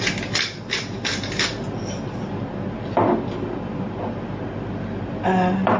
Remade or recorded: recorded